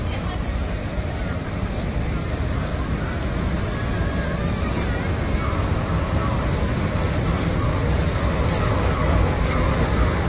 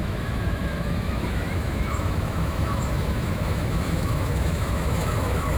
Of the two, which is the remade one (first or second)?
second